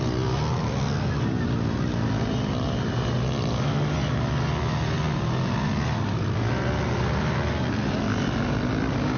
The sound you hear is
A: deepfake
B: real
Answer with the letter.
B